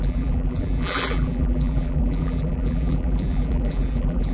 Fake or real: fake